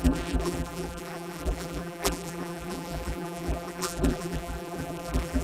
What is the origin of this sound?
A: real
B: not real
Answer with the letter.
B